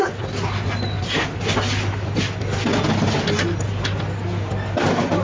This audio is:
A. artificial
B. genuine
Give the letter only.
B